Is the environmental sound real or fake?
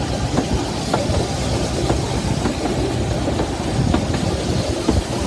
real